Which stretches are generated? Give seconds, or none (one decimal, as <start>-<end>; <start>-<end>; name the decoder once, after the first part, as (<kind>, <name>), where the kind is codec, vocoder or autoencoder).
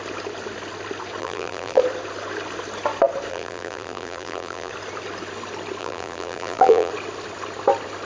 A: 1.2-1.8 (vocoder, BigVGAN v2); 3.3-4.7; 5.8-6.9